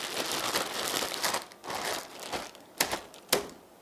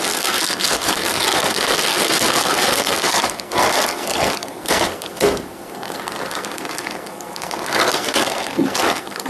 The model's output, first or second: second